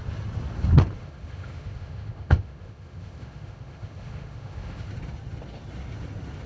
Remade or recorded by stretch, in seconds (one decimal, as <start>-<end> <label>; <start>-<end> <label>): 0.0-1.0 recorded; 1.0-4.9 remade; 4.9-6.5 recorded

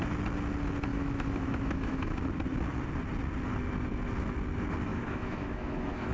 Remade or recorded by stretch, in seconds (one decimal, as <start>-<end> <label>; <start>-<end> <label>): 0.0-0.9 recorded; 0.9-2.2 remade; 2.2-4.9 recorded; 4.9-6.1 remade

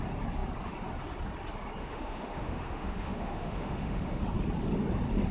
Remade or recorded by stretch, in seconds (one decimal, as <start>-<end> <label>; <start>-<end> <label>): 0.0-1.8 recorded; 1.8-4.2 remade; 4.2-5.3 recorded

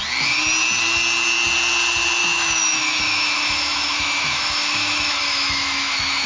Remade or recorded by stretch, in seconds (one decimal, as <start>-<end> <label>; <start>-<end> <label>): 0.0-2.2 recorded; 2.2-6.3 remade

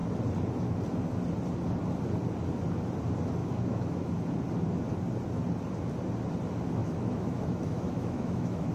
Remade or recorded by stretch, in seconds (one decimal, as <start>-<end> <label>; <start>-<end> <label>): 0.0-3.4 recorded; 3.4-4.1 remade; 4.1-6.8 recorded; 6.8-8.7 remade

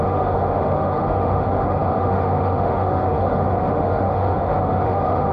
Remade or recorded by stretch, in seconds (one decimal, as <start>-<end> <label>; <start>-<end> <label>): 0.0-5.3 remade

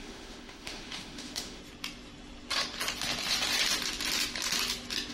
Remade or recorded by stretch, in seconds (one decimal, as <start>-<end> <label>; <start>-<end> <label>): 0.0-1.6 remade; 1.6-5.1 recorded